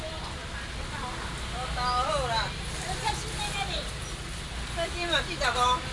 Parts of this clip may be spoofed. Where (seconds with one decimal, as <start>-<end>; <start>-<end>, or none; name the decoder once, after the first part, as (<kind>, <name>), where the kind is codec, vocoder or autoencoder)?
none